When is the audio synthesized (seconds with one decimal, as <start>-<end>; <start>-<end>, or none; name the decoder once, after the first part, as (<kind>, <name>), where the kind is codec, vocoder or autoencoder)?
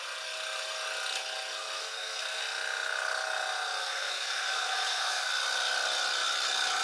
1.8-2.4 (codec, SNAC); 3.8-5.3